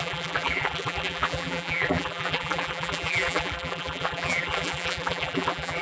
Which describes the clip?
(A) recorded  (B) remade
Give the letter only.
B